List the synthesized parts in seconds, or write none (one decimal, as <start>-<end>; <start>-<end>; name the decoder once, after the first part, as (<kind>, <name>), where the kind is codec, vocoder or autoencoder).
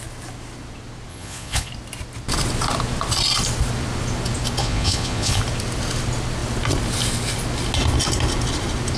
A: 1.1-1.7 (vocoder, Vocos); 4.6-5.4